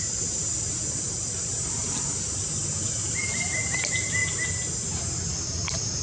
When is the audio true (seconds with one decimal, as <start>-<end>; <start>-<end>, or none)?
0.4-1.0; 1.5-2.7; 4.2-5.3